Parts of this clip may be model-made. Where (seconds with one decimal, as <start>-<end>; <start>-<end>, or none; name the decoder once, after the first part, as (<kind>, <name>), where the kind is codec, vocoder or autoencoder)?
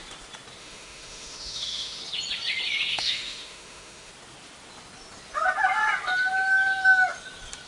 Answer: 0.6-2.0 (autoencoder, DAC-VAE); 2.9-4.1